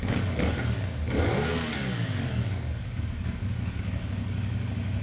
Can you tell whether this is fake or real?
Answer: fake